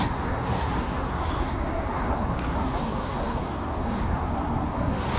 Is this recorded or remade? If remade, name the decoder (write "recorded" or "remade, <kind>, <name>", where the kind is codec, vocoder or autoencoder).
remade, codec, SNAC